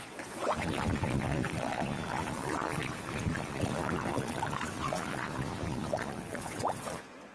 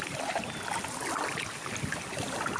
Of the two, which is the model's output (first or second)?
first